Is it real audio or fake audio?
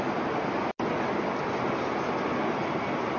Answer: real